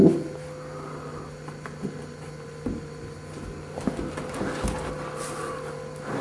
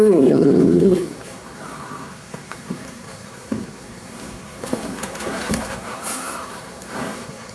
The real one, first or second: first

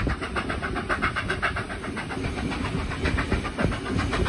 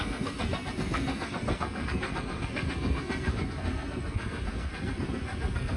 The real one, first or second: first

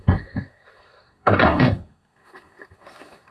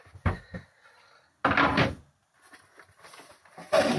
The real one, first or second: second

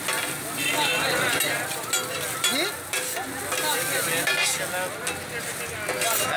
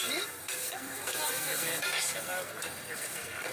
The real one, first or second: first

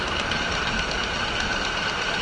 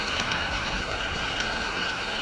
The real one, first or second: first